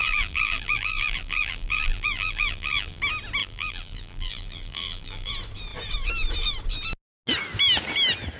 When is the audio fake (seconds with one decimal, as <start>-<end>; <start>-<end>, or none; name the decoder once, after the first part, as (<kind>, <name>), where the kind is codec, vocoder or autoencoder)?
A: 0.0-3.0 (vocoder, BigVGAN v2); 3.4-5.3

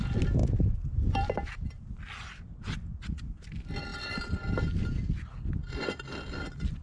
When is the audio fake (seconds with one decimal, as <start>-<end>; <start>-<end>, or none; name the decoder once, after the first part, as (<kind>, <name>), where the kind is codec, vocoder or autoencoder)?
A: none

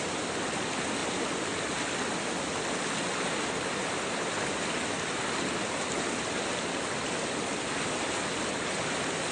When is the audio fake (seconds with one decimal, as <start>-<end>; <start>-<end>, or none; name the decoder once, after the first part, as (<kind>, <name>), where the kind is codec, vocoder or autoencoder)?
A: none